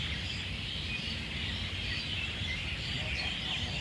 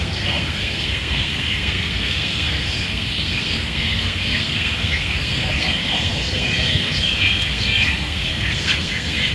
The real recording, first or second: first